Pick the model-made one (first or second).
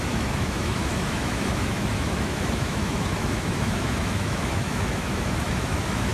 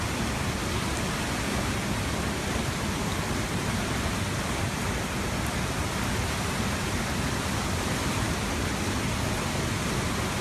first